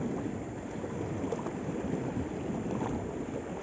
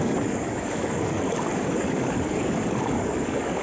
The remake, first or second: second